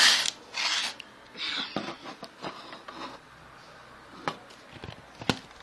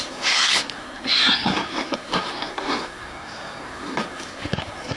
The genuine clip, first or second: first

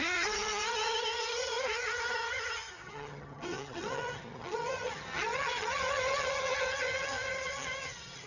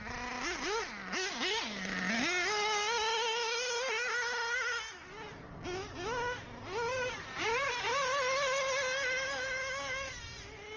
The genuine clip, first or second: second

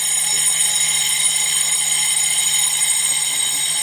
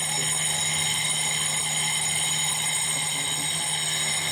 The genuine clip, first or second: second